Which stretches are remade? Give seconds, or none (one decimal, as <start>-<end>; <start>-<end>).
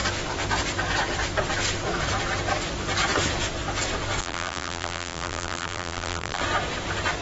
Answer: 4.2-6.4